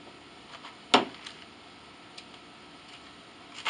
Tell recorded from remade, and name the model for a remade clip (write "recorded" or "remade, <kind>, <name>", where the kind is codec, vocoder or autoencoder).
recorded